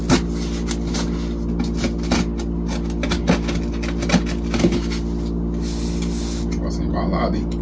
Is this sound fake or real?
real